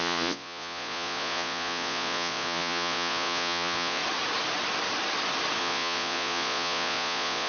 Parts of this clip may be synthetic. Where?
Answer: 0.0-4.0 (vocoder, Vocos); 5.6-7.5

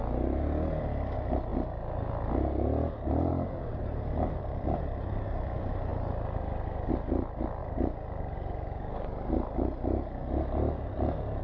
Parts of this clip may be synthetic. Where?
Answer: none

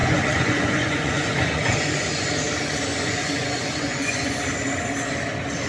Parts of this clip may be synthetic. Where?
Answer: 0.0-2.3 (vocoder, Vocos); 2.9-4.4

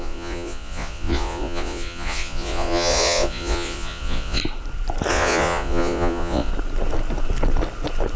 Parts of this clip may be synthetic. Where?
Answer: 0.0-4.4 (vocoder, Vocos); 5.1-6.5